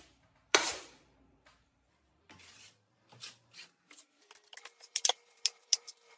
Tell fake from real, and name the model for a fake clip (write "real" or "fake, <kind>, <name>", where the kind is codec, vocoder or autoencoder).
fake, vocoder, BigVGAN v2